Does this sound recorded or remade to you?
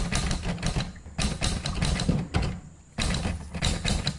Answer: recorded